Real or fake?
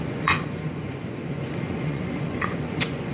fake